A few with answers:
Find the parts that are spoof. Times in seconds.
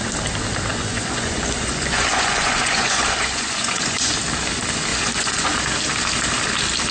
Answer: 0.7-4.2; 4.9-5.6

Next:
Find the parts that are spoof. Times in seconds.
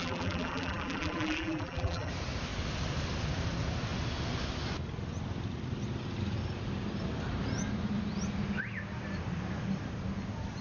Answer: 0.0-2.1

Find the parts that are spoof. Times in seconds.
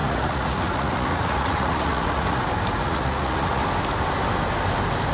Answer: 0.0-2.4; 2.8-3.6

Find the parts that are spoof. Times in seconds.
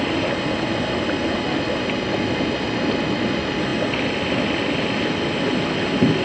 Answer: none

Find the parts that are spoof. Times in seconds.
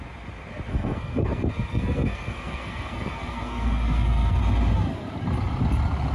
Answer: 0.7-4.4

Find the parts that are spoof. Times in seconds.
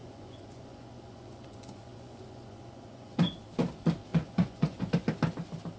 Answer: 0.0-3.3; 4.1-4.9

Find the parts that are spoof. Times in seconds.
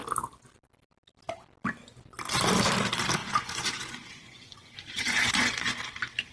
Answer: 3.2-5.8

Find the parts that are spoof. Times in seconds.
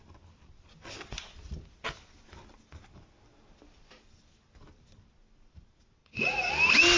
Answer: 6.0-6.5